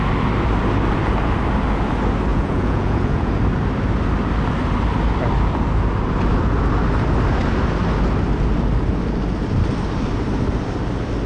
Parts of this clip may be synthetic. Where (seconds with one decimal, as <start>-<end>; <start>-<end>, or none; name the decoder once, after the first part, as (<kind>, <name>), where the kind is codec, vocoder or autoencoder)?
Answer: 2.3-3.3 (vocoder, Vocos)